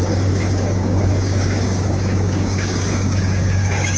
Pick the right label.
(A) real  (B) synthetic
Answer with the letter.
B